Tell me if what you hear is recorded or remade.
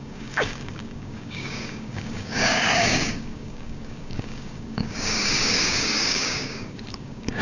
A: remade